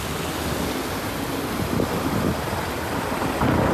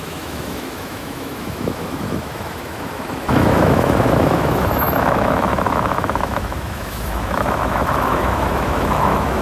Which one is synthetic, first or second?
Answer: second